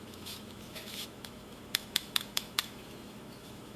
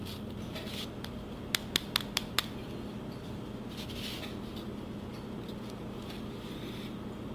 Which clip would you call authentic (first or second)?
second